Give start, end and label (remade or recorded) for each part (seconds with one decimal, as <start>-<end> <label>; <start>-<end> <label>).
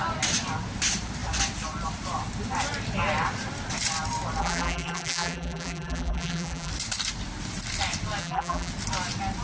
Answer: 0.0-4.4 recorded; 4.4-6.7 remade; 6.7-8.2 recorded; 8.2-8.7 remade; 8.7-9.4 recorded